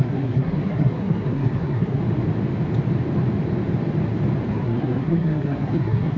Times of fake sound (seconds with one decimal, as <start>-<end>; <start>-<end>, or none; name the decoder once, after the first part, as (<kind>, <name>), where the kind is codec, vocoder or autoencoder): 0.0-2.0 (codec, SNAC); 4.5-6.2